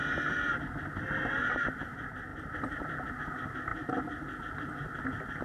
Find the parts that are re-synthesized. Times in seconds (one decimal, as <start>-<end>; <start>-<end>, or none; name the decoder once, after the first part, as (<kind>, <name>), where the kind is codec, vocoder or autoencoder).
2.3-3.1 (vocoder, BigVGAN v2)